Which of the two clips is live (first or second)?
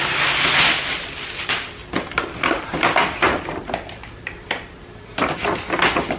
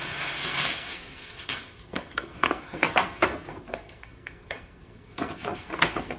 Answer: first